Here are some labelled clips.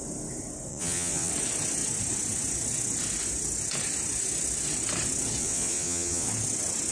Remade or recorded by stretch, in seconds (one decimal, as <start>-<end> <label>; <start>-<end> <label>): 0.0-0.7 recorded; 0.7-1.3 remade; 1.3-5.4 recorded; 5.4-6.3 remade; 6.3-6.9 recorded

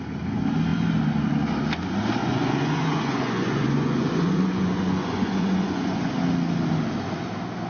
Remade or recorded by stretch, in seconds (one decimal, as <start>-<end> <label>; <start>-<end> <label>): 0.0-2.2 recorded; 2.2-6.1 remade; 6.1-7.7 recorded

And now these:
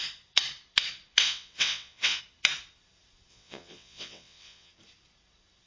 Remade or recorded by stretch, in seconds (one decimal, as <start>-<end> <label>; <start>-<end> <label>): 0.0-1.2 recorded; 1.2-2.2 remade; 2.2-3.3 recorded; 3.3-4.7 remade; 4.7-5.7 recorded

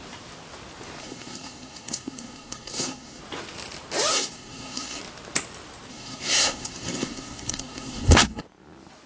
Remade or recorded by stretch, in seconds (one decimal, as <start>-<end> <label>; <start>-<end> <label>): 0.0-1.0 recorded; 1.0-3.2 remade; 3.2-4.1 recorded; 4.1-5.0 remade; 5.0-5.9 recorded; 5.9-8.4 remade; 8.4-9.1 recorded

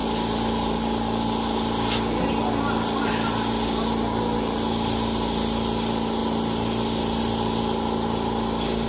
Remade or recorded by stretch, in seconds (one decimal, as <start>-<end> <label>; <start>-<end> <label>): 0.0-8.9 recorded